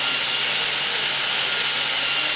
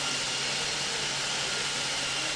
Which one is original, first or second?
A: first